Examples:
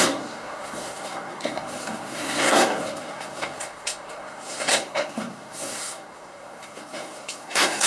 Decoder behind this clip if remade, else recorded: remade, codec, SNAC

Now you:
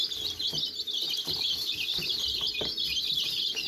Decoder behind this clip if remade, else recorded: recorded